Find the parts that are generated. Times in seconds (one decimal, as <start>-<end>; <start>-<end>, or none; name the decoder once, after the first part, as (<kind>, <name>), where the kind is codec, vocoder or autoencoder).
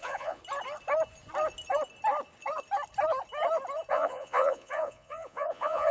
0.0-0.4 (vocoder, Vocos); 3.9-5.9